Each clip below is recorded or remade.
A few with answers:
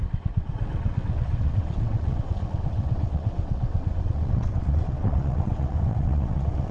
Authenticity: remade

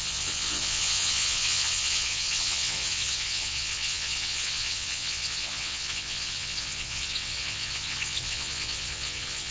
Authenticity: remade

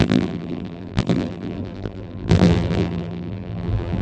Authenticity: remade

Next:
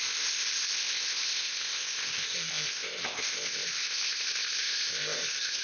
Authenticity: remade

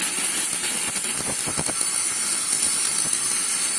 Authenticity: recorded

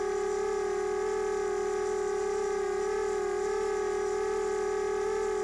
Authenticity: recorded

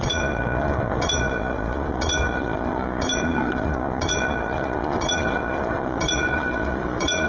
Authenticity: remade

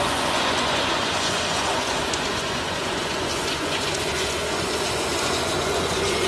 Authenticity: remade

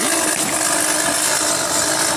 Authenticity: recorded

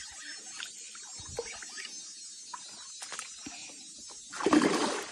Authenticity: recorded